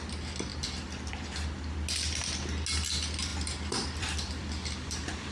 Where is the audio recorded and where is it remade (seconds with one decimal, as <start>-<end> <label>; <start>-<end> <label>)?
0.0-3.3 recorded; 3.3-5.3 remade